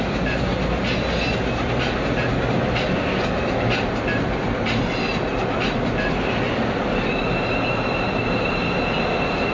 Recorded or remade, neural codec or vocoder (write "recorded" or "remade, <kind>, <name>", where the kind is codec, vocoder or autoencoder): recorded